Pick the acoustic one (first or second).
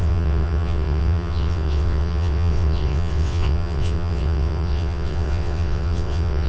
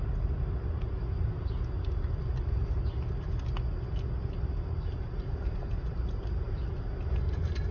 second